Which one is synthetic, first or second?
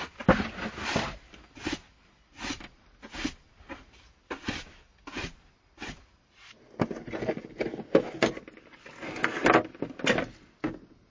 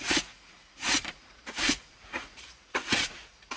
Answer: second